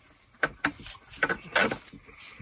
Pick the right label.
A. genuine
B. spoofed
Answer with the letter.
A